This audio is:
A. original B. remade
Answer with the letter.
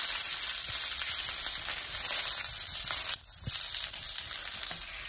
A